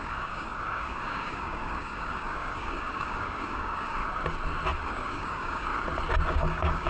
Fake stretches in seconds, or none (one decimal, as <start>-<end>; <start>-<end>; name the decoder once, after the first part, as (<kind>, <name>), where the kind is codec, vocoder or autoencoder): 0.0-4.0 (codec, DAC); 4.9-5.7; 6.3-6.9